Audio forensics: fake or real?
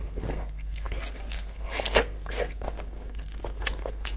fake